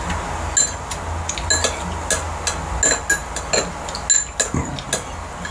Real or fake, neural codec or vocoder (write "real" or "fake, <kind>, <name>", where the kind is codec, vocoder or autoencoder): real